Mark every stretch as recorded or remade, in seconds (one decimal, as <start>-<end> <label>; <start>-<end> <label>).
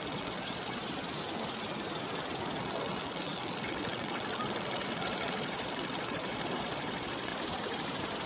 0.0-0.8 remade; 0.8-2.6 recorded; 2.6-7.3 remade; 7.3-8.3 recorded